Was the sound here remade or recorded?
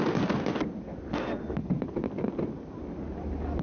recorded